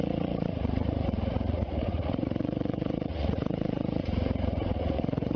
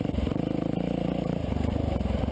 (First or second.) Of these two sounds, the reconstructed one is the first